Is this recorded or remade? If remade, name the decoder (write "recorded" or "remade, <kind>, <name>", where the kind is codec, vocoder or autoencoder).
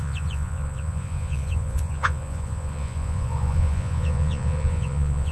remade, vocoder, Vocos